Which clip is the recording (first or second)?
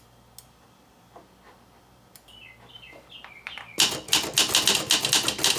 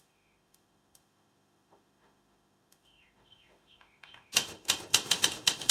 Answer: first